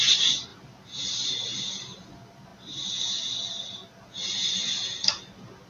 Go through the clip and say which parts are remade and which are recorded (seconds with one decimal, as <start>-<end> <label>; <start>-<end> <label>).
0.0-5.7 recorded